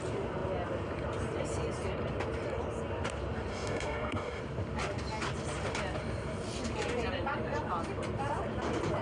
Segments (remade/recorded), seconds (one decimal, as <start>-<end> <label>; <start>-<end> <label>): 0.0-3.5 recorded; 3.5-4.4 remade; 4.4-9.0 recorded